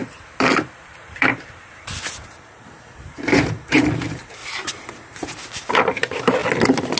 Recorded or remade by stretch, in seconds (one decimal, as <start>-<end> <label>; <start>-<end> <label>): 0.0-4.4 remade; 4.4-5.7 recorded; 5.7-6.4 remade; 6.4-7.0 recorded